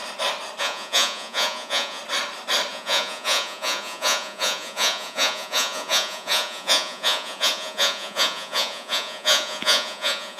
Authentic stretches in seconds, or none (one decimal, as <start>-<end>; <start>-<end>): 0.0-0.6; 2.0-2.7